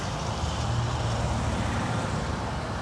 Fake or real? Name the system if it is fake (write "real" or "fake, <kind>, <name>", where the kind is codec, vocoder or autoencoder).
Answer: real